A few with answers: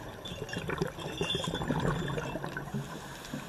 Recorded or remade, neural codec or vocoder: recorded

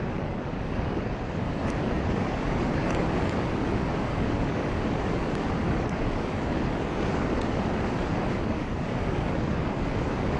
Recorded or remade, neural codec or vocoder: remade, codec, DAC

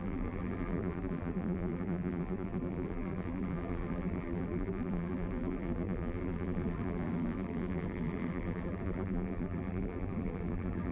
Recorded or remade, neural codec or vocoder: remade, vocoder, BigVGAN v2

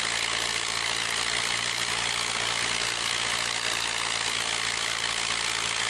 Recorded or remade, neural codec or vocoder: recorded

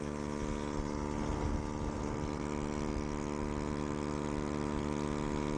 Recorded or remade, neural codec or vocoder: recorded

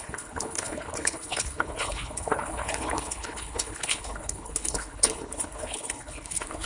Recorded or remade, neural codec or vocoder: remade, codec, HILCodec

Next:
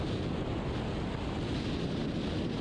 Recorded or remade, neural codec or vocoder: recorded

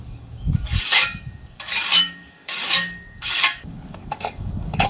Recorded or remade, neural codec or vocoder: remade, codec, DAC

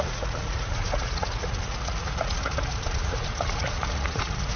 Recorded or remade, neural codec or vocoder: remade, vocoder, Vocos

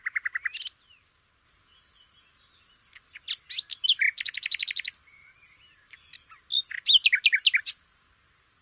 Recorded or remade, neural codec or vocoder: recorded